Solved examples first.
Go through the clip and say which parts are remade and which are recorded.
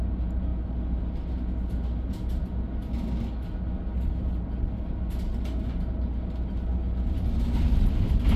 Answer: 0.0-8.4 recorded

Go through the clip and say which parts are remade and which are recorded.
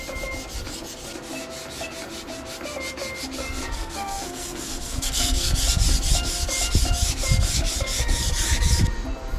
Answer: 0.0-3.4 recorded; 3.4-5.5 remade; 5.5-9.4 recorded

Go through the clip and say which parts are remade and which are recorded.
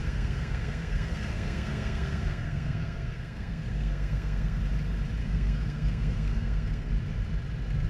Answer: 0.0-4.6 remade; 4.6-5.2 recorded; 5.2-6.9 remade; 6.9-7.9 recorded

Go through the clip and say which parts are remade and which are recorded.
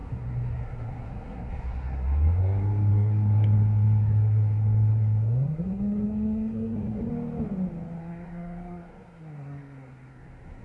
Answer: 0.0-7.1 remade; 7.1-8.0 recorded; 8.0-10.6 remade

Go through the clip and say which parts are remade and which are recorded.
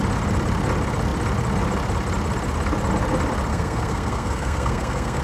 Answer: 0.0-3.5 recorded; 3.5-5.2 remade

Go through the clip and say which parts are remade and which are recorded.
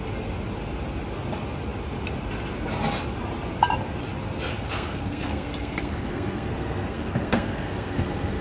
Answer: 0.0-4.5 recorded; 4.5-8.4 remade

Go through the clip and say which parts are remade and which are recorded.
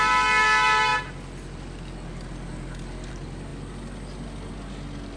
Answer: 0.0-5.2 recorded